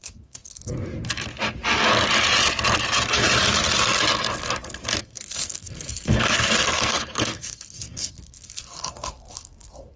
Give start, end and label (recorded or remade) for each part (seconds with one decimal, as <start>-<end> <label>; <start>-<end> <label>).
0.0-0.9 remade; 0.9-5.0 recorded; 5.0-10.0 remade